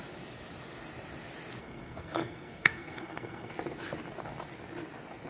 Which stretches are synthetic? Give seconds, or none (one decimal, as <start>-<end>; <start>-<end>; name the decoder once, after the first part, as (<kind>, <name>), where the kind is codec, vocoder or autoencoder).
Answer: 1.6-3.5 (codec, SNAC)